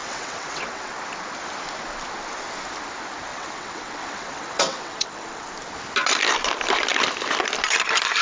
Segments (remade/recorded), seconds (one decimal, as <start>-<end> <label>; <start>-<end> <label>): 0.0-0.9 remade; 0.9-3.3 recorded; 3.3-5.4 remade; 5.4-8.2 recorded